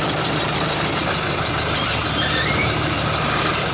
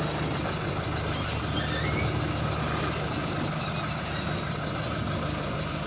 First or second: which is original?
second